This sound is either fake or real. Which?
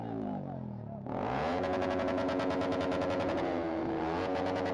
fake